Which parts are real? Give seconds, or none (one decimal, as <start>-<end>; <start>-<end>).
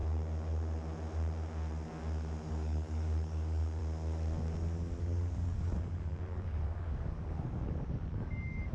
0.0-2.5; 3.8-5.0